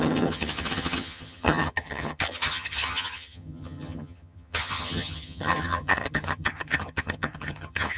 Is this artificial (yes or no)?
yes